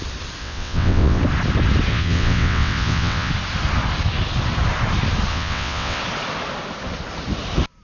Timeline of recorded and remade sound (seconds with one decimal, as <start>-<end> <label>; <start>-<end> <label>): 0.0-0.4 recorded; 0.4-1.2 remade; 1.2-1.9 recorded; 1.9-3.3 remade; 3.3-5.3 recorded; 5.3-6.0 remade; 6.0-7.8 recorded